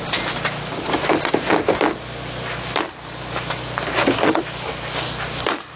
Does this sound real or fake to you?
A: real